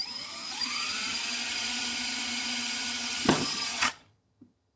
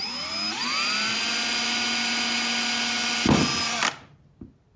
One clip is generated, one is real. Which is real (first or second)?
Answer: second